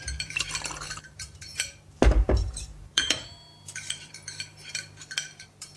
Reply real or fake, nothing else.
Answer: fake